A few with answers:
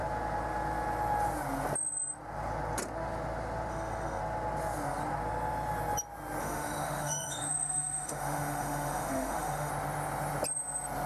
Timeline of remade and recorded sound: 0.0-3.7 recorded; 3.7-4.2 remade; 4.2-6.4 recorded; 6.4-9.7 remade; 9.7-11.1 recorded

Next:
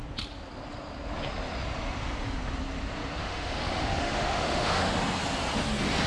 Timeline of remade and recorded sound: 0.0-3.2 recorded; 3.2-4.8 remade; 4.8-6.1 recorded

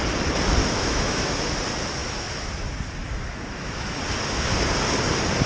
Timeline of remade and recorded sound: 0.0-0.6 recorded; 0.6-1.6 remade; 1.6-2.0 recorded; 2.0-2.5 remade; 2.5-3.0 recorded; 3.0-4.0 remade; 4.0-5.5 recorded

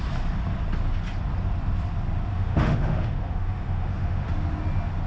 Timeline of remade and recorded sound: 0.0-2.3 recorded; 2.3-4.3 remade; 4.3-5.1 recorded

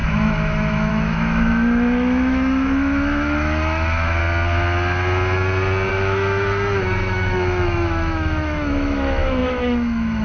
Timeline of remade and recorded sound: 0.0-4.2 remade; 4.2-5.9 recorded; 5.9-10.2 remade

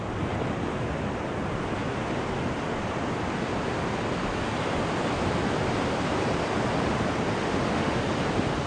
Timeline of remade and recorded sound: 0.0-7.4 recorded; 7.4-8.0 remade; 8.0-8.7 recorded

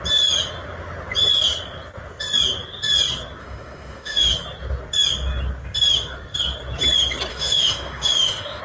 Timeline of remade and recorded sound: 0.0-3.4 recorded; 3.4-4.3 remade; 4.3-7.3 recorded; 7.3-8.6 remade